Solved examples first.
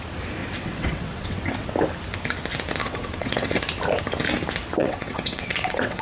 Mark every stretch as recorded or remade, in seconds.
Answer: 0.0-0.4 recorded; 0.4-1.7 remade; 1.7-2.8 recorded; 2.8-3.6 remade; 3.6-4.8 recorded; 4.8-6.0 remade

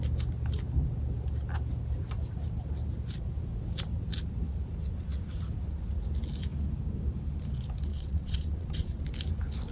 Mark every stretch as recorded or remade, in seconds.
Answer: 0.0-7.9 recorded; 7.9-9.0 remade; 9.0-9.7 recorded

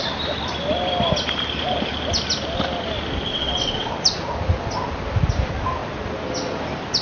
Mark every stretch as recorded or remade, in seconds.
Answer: 0.0-3.3 recorded; 3.3-3.9 remade; 3.9-7.0 recorded